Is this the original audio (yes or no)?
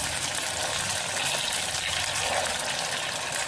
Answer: yes